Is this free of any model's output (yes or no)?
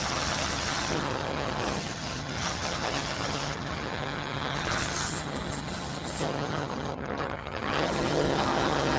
no